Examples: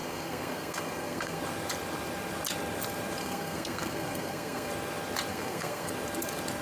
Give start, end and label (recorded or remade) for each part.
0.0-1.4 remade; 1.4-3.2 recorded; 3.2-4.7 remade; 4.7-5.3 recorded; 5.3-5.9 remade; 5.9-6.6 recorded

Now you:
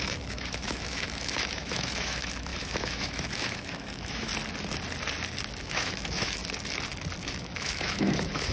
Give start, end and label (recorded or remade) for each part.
0.0-4.3 remade; 4.3-5.6 recorded; 5.6-6.4 remade; 6.4-7.2 recorded; 7.2-8.5 remade

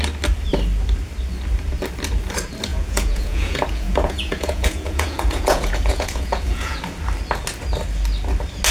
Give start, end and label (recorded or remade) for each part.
0.0-2.7 recorded; 2.7-6.8 remade; 6.8-8.7 recorded

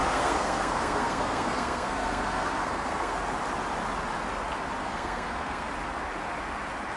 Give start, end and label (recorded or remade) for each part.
0.0-3.1 remade; 3.1-4.8 recorded; 4.8-5.7 remade; 5.7-7.0 recorded

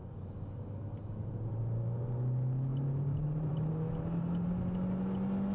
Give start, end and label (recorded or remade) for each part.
0.0-2.7 recorded; 2.7-3.7 remade; 3.7-5.5 recorded

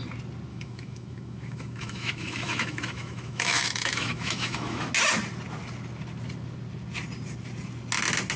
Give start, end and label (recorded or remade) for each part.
0.0-0.5 recorded; 0.5-4.9 remade; 4.9-8.4 recorded